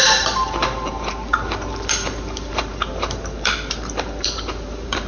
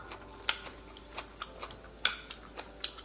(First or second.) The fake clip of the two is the first